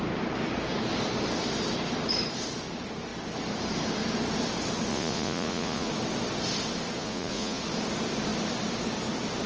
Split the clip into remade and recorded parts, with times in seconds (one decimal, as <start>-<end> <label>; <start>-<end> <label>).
0.0-4.9 recorded; 4.9-5.9 remade; 5.9-7.0 recorded; 7.0-7.6 remade; 7.6-9.5 recorded

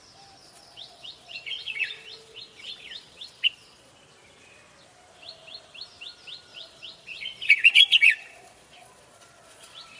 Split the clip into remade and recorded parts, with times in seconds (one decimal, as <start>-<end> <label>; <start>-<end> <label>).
0.0-0.4 recorded; 0.4-3.9 remade; 3.9-6.5 recorded; 6.5-10.0 remade

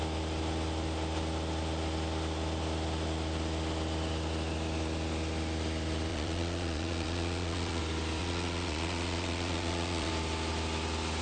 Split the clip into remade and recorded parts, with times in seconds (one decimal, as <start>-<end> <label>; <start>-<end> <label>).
0.0-6.1 recorded; 6.1-7.8 remade; 7.8-8.2 recorded; 8.2-10.1 remade; 10.1-11.2 recorded

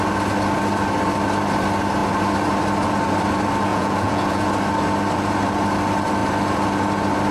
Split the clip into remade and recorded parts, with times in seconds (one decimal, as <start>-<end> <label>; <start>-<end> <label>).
0.0-3.7 recorded; 3.7-4.5 remade; 4.5-7.3 recorded